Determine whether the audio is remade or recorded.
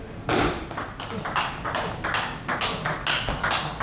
recorded